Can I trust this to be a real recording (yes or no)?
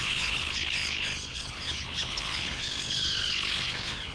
no